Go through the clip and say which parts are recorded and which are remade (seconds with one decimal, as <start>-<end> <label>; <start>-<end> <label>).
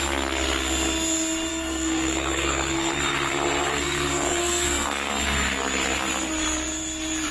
0.0-1.5 recorded; 1.5-2.9 remade; 2.9-3.7 recorded; 3.7-5.1 remade; 5.1-7.3 recorded